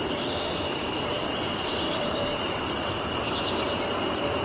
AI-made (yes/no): yes